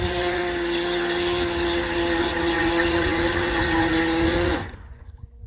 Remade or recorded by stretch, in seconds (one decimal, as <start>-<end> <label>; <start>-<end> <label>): 0.0-0.4 remade; 0.4-2.2 recorded; 2.2-5.5 remade